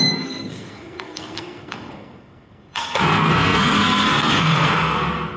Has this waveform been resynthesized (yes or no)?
yes